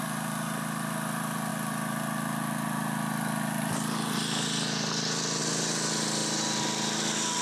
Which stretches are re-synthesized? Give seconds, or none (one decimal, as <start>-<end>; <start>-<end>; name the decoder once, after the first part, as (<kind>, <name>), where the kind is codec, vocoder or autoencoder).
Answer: none